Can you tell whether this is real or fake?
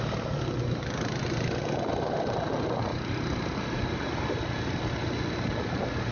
real